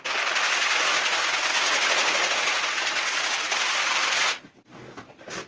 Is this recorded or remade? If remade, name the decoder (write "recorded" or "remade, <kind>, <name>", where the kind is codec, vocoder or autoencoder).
recorded